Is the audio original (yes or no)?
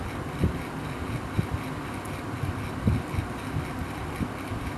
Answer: yes